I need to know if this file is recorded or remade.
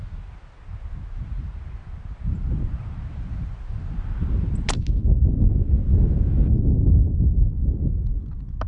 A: recorded